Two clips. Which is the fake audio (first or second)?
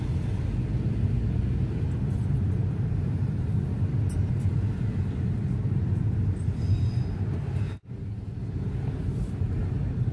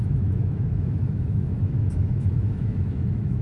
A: second